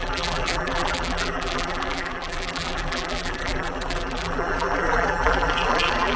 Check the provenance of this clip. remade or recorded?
remade